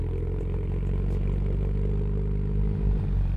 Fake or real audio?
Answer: fake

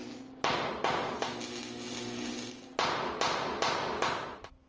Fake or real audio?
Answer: real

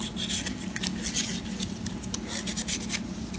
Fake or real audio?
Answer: real